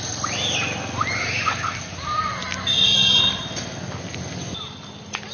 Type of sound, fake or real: real